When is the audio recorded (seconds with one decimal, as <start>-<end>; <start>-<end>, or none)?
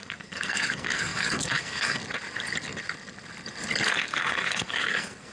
2.0-3.9